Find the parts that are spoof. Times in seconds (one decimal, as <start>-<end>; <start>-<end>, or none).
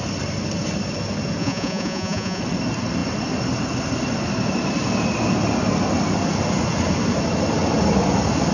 1.4-2.4